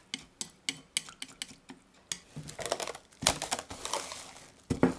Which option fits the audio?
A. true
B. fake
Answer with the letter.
A